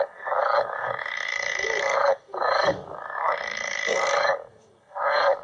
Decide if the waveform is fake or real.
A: fake